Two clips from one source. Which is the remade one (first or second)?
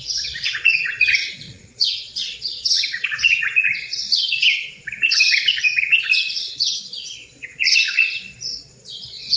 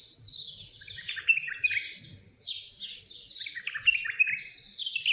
first